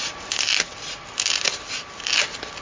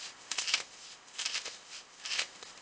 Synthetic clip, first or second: second